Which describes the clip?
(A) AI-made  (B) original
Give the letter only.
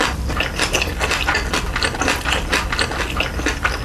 B